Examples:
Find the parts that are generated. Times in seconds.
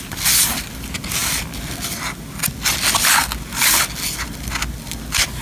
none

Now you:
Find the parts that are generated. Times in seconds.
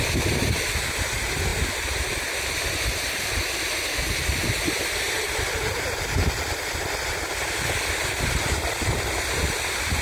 none